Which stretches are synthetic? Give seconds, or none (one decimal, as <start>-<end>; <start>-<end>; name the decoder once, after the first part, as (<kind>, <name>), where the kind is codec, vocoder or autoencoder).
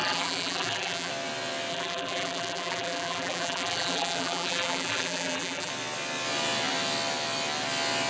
0.0-1.1 (vocoder, BigVGAN v2); 1.7-5.7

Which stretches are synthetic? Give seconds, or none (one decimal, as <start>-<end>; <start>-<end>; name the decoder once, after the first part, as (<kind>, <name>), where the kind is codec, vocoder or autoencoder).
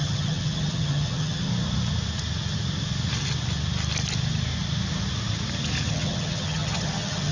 0.0-1.5 (vocoder, HiFi-GAN); 5.9-7.3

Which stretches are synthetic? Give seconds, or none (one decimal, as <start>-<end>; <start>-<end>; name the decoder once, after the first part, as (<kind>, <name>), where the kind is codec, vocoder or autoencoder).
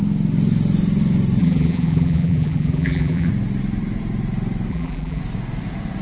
1.4-3.3 (vocoder, BigVGAN v2); 4.7-5.2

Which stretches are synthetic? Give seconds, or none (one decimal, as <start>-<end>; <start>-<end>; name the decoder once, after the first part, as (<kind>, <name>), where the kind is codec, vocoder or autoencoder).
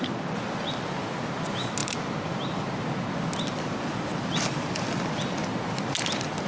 none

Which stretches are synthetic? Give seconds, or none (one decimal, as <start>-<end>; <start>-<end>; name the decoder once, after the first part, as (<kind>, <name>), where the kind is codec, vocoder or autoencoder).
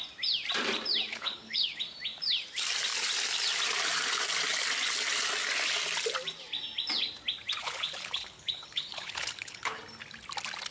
1.1-1.8 (codec, HILCodec); 7.6-9.8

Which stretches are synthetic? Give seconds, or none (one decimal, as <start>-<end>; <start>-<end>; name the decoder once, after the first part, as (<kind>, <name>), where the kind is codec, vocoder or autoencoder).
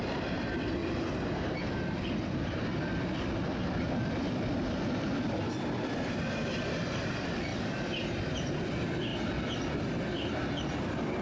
0.0-0.8 (vocoder, BigVGAN v2); 2.4-7.5; 8.2-9.1; 10.3-11.2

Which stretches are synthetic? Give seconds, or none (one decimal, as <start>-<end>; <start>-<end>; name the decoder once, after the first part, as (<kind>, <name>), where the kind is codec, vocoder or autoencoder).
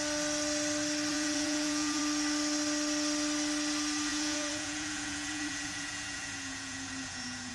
1.1-2.0 (vocoder, Vocos); 4.1-7.5